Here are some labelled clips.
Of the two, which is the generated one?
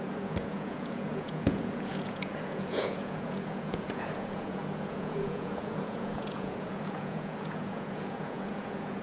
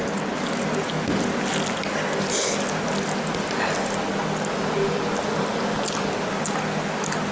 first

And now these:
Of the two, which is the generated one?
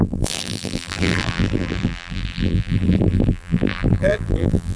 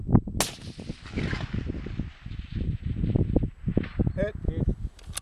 first